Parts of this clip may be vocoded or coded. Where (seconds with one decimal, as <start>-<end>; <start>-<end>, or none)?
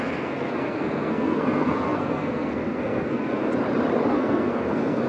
0.0-3.5; 4.1-5.1